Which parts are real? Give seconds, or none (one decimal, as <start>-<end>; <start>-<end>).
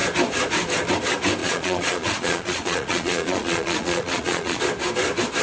0.0-1.4; 4.6-5.4